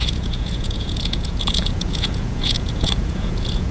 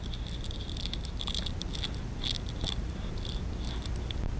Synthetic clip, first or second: first